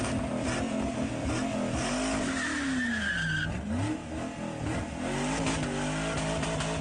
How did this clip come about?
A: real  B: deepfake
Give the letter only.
A